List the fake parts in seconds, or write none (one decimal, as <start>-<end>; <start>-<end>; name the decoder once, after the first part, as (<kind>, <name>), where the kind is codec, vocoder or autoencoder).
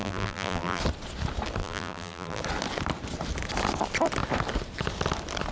0.0-0.8 (vocoder, BigVGAN v2); 1.6-2.4